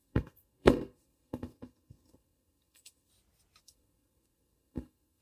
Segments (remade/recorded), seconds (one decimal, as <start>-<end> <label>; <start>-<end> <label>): 0.0-3.1 remade; 3.1-3.6 recorded; 3.6-5.2 remade